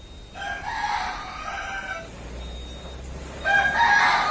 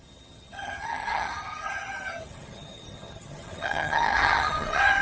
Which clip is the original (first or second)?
first